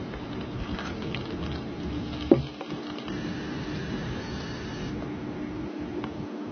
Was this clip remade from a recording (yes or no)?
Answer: no